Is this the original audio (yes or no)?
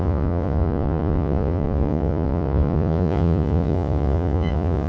no